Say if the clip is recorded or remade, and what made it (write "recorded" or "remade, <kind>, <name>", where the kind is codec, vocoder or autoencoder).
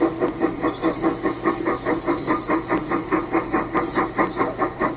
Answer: recorded